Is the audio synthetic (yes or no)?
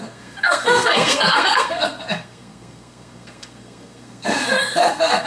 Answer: yes